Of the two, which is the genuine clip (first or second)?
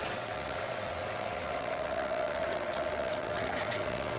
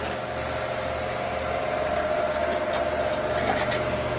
second